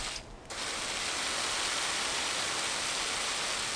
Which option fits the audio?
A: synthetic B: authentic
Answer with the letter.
B